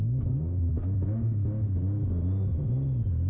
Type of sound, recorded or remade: recorded